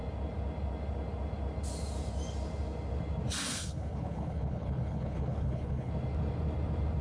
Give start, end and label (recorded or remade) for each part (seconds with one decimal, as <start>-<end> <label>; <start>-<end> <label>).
0.0-3.5 recorded; 3.5-5.9 remade; 5.9-7.0 recorded